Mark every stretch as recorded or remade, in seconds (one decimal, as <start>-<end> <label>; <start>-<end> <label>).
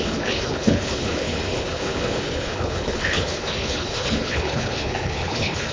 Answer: 0.0-5.7 remade